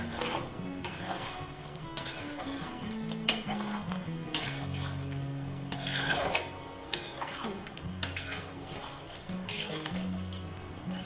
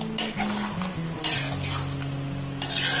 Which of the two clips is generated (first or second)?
first